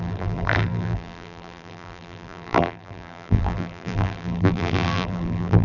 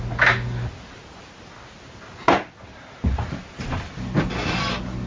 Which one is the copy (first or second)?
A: first